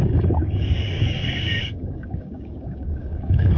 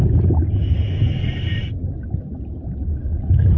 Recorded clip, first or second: second